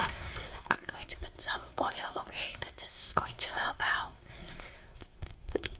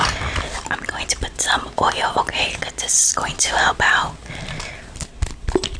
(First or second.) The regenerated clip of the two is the first